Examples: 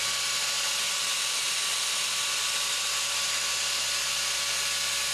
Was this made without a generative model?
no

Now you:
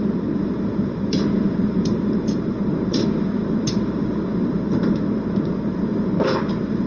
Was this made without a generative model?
no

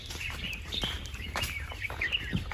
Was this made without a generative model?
no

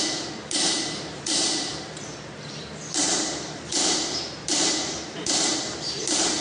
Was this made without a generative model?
no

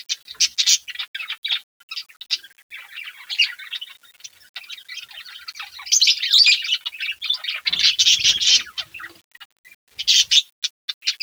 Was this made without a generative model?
yes